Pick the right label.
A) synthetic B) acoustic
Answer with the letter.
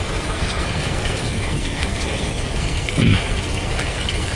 A